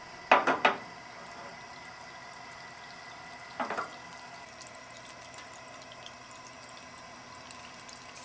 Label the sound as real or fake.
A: real